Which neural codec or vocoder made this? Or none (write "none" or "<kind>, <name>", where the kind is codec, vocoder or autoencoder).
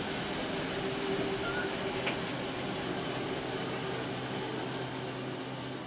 none